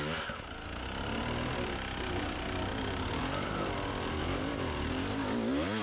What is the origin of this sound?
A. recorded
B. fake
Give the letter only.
A